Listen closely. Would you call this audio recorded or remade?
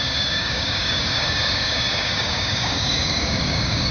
remade